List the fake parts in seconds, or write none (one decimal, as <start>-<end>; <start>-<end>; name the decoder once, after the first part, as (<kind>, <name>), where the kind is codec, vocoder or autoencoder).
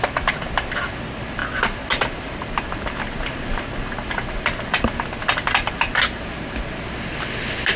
none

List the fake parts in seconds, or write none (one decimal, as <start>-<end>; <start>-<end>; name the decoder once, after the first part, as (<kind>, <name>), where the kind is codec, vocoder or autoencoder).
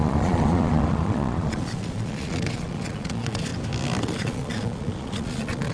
0.0-3.5 (vocoder, Vocos); 4.0-5.7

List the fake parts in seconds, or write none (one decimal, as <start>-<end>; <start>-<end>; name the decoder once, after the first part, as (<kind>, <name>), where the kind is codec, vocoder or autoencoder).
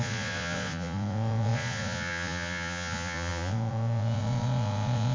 0.0-5.1 (vocoder, Vocos)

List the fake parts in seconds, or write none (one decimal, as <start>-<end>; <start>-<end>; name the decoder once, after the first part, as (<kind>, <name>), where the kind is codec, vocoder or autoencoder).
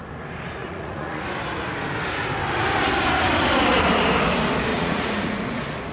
0.6-1.2 (vocoder, Vocos); 4.7-5.4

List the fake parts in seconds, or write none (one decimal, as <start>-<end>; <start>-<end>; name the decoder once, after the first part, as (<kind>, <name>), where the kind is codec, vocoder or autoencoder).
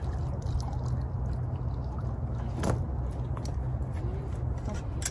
none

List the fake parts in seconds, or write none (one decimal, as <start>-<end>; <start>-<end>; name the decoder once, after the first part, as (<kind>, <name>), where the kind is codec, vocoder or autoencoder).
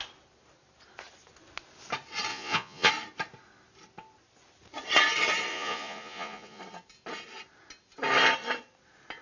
2.3-2.9 (vocoder, Vocos); 5.5-6.6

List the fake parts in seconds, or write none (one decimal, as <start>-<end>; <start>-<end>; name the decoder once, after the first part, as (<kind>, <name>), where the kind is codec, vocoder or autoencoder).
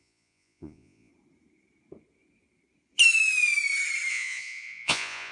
0.0-1.1 (vocoder, Vocos); 4.1-5.3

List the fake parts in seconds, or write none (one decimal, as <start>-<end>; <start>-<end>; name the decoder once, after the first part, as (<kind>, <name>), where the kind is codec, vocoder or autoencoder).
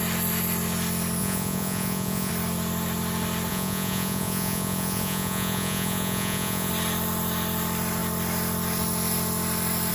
1.2-2.3 (vocoder, Vocos); 3.5-6.7